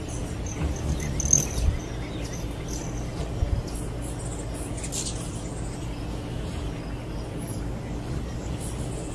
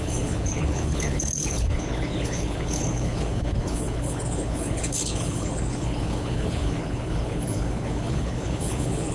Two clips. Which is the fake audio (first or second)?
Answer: second